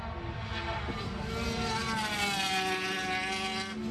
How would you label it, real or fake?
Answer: real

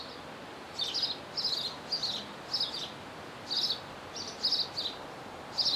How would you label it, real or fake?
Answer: real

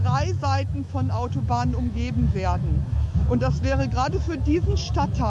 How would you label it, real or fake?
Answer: fake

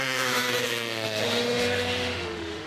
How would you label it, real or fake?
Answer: fake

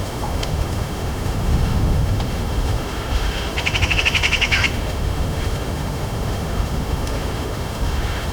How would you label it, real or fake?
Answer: fake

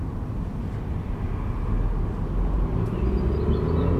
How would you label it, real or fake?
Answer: real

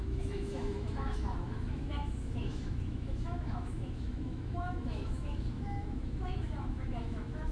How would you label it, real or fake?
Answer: fake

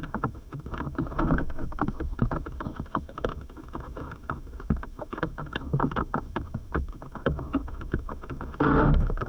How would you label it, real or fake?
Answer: fake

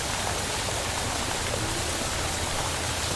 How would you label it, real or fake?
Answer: real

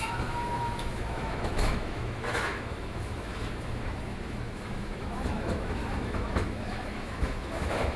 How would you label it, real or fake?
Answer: fake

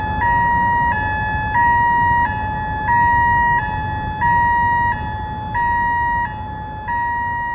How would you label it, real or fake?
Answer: real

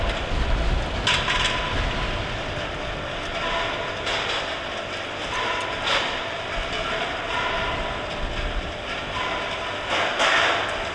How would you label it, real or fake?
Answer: real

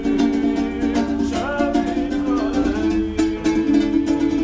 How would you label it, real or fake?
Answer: real